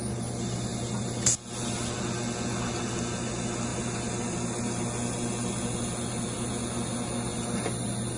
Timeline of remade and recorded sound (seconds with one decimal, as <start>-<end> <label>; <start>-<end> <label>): 0.0-8.2 recorded